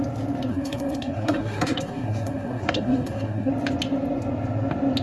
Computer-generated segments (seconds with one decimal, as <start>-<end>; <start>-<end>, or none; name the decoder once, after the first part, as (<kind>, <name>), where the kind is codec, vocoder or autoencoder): 0.5-3.5 (codec, SNAC)

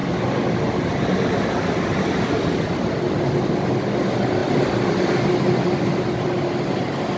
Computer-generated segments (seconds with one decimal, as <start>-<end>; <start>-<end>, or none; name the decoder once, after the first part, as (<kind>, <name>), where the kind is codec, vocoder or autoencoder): none

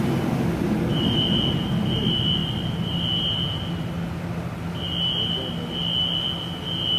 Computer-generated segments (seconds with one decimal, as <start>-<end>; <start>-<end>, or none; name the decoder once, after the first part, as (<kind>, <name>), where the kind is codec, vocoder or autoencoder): 0.9-2.0 (vocoder, BigVGAN v2)

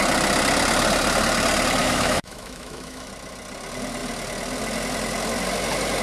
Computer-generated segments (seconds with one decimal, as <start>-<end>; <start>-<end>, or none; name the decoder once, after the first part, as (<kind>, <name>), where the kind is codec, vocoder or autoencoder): 1.8-3.1 (autoencoder, DAC-VAE)

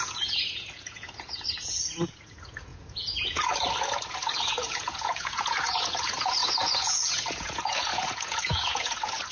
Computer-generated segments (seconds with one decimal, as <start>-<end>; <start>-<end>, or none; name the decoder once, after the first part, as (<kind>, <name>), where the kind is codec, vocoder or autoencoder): 0.0-9.3 (vocoder, Vocos)

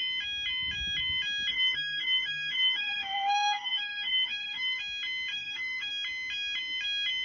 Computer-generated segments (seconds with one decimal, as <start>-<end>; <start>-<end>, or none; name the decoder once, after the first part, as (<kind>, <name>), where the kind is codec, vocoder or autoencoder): 1.5-4.8 (autoencoder, DAC-VAE); 5.3-5.9